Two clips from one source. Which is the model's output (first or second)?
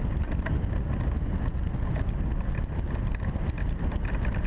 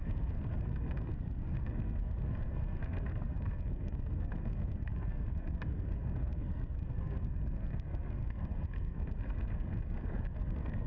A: second